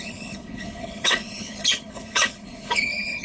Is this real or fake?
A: fake